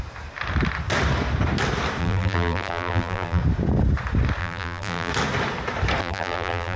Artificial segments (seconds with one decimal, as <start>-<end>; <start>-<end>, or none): 2.0-3.4; 4.4-5.1; 6.0-6.8